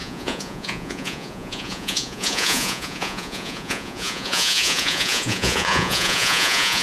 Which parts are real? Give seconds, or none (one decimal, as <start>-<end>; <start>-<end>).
none